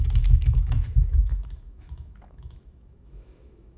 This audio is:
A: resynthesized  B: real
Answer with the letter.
A